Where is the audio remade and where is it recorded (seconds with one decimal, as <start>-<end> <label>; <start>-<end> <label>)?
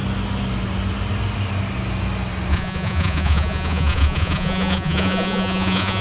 0.0-2.5 recorded; 2.5-6.0 remade